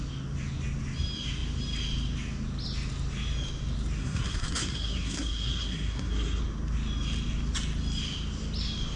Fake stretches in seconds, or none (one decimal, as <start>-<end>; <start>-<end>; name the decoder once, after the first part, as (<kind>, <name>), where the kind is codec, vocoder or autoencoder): 4.0-6.4 (codec, SNAC)